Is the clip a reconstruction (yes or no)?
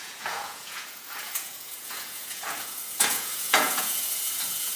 yes